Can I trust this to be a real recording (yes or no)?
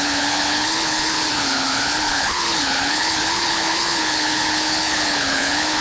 no